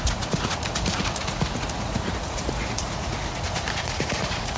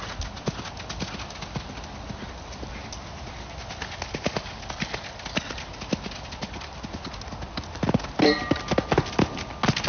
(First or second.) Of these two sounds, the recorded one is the second